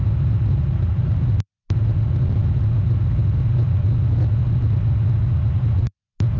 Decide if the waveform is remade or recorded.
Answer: recorded